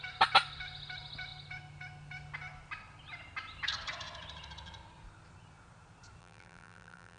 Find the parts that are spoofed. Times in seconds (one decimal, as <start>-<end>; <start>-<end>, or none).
6.2-7.2